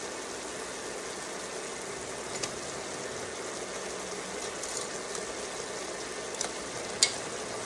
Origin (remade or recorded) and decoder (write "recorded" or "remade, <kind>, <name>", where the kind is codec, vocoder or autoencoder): recorded